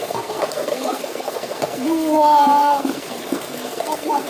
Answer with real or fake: fake